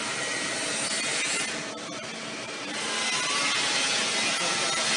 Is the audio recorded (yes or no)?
yes